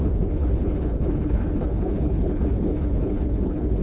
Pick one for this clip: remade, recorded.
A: remade